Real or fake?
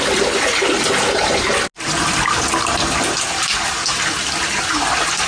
real